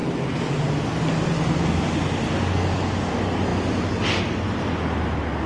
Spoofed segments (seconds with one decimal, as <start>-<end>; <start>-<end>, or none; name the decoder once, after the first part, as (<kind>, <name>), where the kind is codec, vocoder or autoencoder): none